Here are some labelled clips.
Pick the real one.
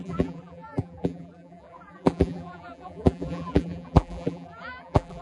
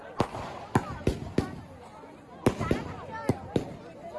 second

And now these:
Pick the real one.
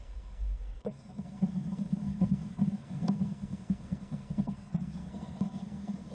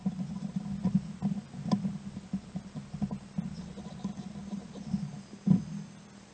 second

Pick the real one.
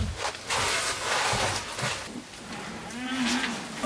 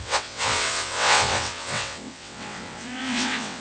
first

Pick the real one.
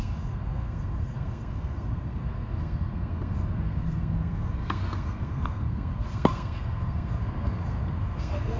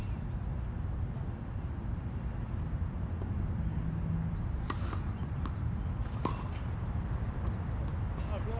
second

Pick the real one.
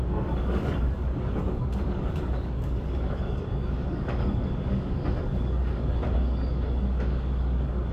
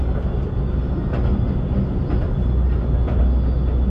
second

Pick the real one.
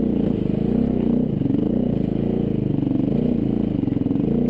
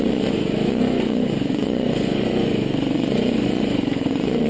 first